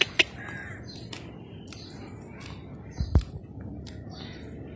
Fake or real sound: real